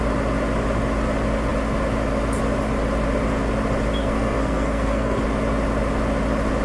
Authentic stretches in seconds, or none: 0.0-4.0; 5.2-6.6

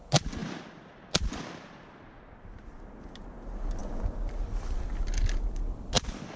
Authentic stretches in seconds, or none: 0.0-6.4